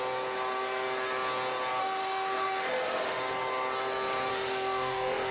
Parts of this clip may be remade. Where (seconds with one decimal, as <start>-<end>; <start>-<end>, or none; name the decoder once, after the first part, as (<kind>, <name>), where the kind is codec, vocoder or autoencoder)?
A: 1.8-3.2 (autoencoder, DAC-VAE); 4.3-5.3